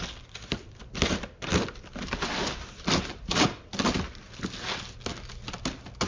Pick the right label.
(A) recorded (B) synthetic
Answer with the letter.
A